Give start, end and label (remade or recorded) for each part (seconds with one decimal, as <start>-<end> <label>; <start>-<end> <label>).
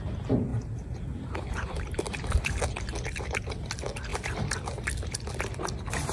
0.0-6.1 recorded